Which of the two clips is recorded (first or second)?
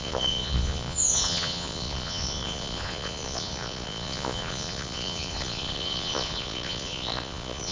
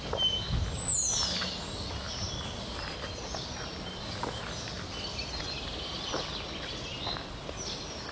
second